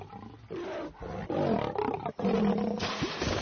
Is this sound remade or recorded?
recorded